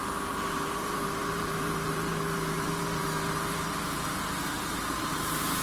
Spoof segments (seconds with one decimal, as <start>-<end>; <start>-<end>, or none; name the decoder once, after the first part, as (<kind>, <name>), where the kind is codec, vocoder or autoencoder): 0.0-5.6 (vocoder, BigVGAN v2)